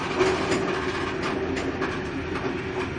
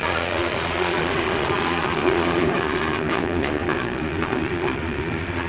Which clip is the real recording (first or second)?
first